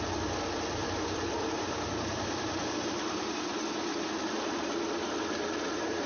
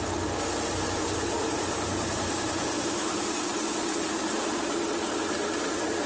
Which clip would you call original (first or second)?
second